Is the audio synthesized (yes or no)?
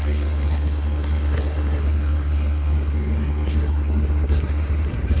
yes